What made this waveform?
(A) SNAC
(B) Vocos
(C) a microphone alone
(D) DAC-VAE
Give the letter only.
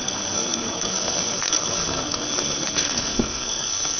A